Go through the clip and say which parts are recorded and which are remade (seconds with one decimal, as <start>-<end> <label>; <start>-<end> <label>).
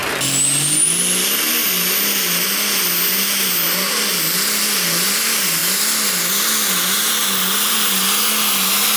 0.0-9.0 recorded